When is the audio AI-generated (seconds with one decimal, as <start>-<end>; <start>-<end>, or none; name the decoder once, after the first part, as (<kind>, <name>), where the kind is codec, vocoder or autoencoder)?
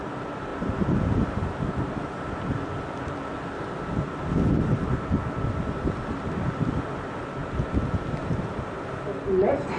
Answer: none